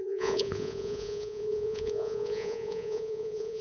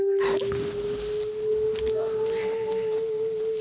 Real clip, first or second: second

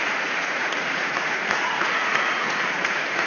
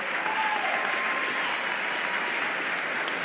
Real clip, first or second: second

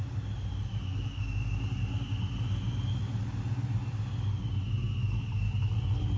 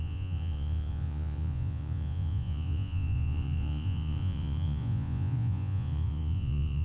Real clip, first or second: first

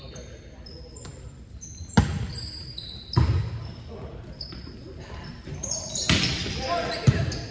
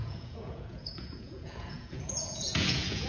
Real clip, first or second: first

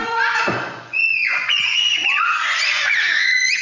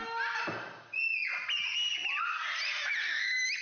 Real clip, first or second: second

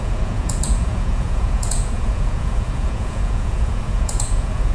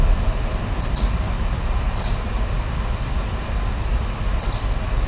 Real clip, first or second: second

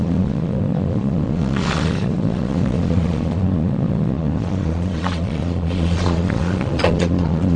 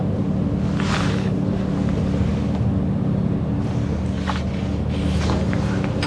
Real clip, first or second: second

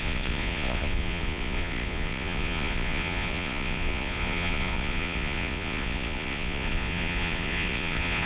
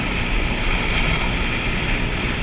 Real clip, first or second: second